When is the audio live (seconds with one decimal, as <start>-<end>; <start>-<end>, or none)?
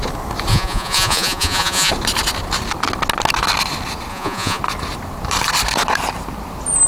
0.0-0.5; 1.9-4.1; 4.6-6.9